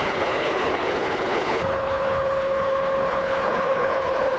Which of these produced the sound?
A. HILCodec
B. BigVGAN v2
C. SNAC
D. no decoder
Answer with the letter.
A